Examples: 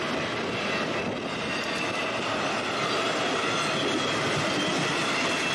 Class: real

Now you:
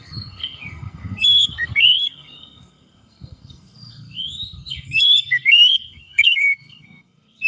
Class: fake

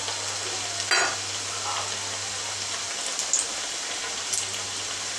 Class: real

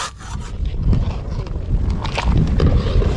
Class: real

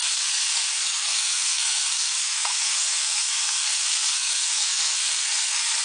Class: fake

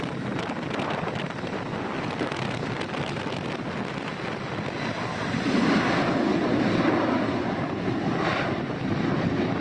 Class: real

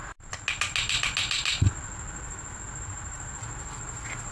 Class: real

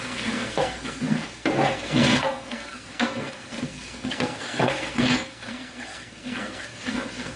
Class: fake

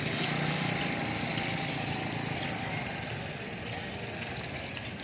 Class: real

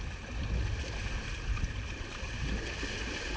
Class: real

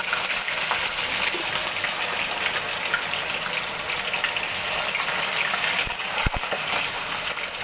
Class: real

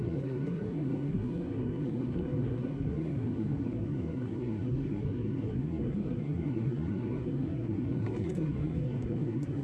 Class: fake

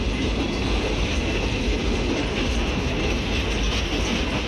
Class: real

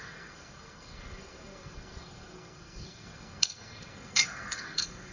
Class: fake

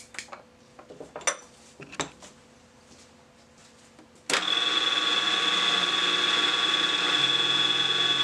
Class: real